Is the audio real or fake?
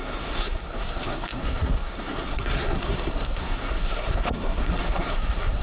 fake